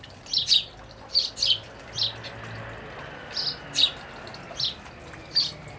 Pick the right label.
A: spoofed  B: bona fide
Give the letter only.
B